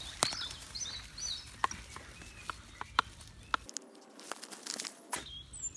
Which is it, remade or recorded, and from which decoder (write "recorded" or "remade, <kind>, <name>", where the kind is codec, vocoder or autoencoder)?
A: recorded